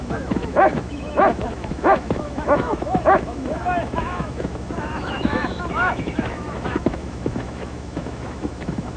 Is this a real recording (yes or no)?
no